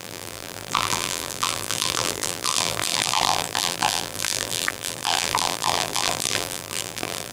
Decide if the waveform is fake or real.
fake